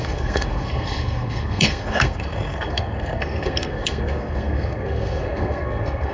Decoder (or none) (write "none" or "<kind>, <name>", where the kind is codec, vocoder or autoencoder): codec, SNAC